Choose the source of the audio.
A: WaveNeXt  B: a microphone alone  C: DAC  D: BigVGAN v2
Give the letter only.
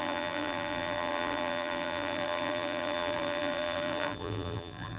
D